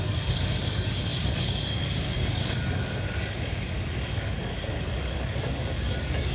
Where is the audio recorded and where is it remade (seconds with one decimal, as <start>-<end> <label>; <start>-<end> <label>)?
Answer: 0.0-6.3 remade